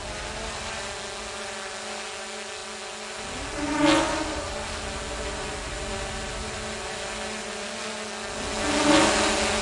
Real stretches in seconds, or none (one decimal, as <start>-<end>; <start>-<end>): 0.0-9.6